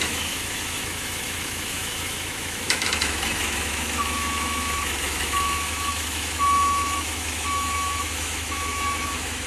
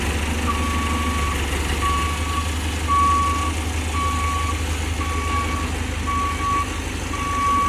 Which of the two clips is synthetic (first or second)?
first